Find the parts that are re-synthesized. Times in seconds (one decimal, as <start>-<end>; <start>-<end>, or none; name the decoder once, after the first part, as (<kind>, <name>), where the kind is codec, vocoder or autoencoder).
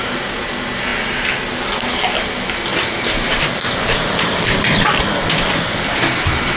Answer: 2.7-5.5 (vocoder, BigVGAN v2)